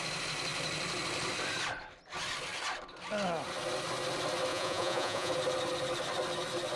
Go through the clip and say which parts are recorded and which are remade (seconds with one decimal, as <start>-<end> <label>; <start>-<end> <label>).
0.0-4.5 recorded; 4.5-5.3 remade; 5.3-6.8 recorded